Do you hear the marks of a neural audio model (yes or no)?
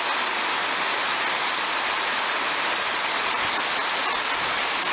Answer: no